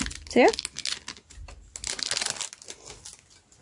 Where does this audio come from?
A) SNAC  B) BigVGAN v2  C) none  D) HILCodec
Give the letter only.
C